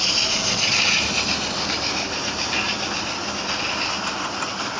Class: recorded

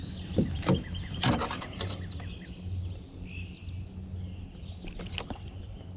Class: recorded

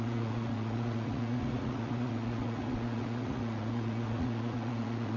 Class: remade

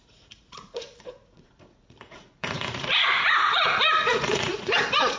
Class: remade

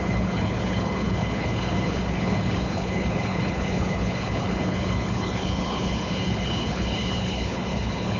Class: remade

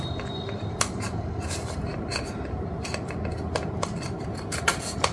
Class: recorded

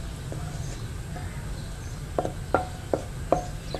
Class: recorded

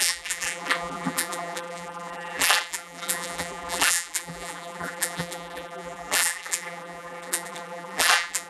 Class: remade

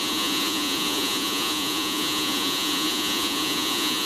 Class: remade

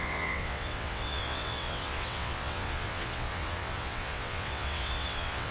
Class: remade